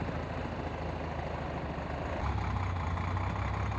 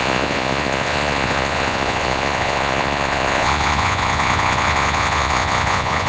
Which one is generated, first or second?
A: second